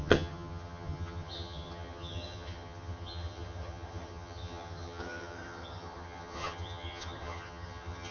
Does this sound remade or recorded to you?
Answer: remade